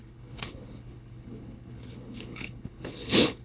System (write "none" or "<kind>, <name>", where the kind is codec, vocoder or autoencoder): codec, HILCodec